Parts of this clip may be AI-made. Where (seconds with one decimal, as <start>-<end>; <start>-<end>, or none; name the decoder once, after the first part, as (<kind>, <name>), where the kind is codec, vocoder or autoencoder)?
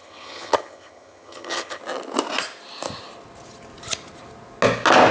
0.0-1.8 (vocoder, HiFi-GAN)